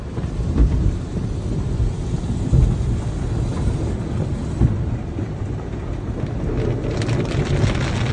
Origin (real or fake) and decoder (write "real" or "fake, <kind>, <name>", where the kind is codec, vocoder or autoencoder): real